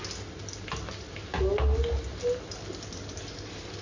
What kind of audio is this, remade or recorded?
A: recorded